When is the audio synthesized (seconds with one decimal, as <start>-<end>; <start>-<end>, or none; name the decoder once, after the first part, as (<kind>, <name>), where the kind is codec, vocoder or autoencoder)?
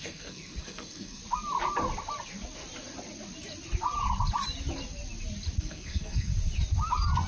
0.0-1.2 (codec, SNAC); 5.6-6.3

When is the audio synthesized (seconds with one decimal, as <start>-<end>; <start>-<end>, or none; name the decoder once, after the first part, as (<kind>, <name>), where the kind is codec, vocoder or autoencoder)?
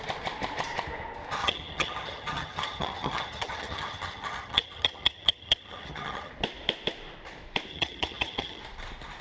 1.4-6.3 (vocoder, HiFi-GAN); 7.7-8.6